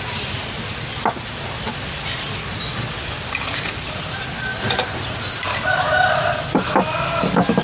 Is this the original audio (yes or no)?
yes